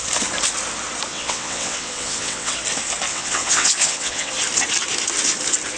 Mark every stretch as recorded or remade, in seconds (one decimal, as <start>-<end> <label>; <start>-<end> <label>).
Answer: 0.0-1.1 recorded; 1.1-2.5 remade; 2.5-3.1 recorded; 3.1-4.3 remade; 4.3-5.8 recorded